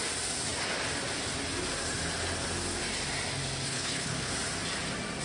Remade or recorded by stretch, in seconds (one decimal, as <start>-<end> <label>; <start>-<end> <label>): 0.0-3.7 recorded; 3.7-4.3 remade; 4.3-5.2 recorded

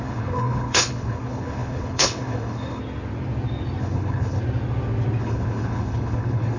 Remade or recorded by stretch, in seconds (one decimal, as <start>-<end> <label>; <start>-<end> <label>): 0.0-2.8 remade; 2.8-3.8 recorded; 3.8-4.4 remade; 4.4-5.2 recorded; 5.2-6.6 remade

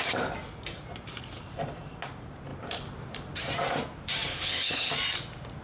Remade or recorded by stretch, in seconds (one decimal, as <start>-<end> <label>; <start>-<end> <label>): 0.0-4.3 recorded; 4.3-4.9 remade; 4.9-5.6 recorded